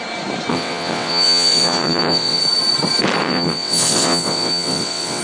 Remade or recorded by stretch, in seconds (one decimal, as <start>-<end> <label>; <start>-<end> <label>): 0.0-0.5 recorded; 0.5-2.4 remade; 2.4-3.2 recorded; 3.2-5.2 remade